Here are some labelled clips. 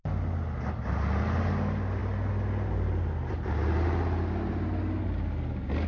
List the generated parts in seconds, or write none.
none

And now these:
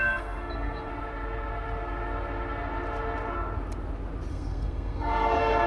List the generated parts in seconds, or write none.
0.0-0.9 (codec, SNAC); 4.3-5.7

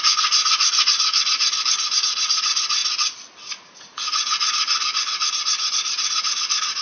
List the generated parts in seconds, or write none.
0.0-2.8 (vocoder, Vocos); 3.5-6.8

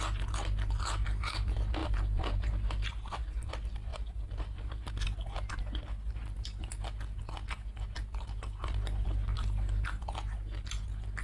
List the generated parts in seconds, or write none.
1.8-3.5 (vocoder, BigVGAN v2); 3.9-4.9

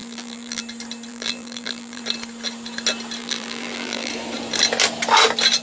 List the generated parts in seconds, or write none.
0.0-0.6 (vocoder, BigVGAN v2); 1.1-2.0; 3.2-4.1

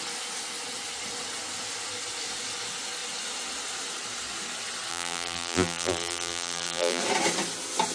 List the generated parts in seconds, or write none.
4.9-7.0 (vocoder, BigVGAN v2)